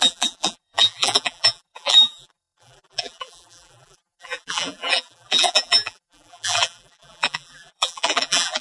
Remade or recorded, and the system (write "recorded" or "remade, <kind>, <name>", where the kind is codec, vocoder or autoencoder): remade, vocoder, BigVGAN v2